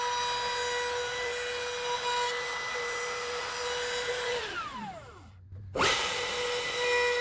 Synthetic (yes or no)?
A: no